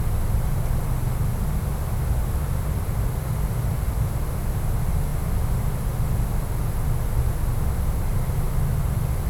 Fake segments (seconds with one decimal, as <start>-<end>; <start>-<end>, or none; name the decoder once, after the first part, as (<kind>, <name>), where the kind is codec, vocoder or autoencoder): none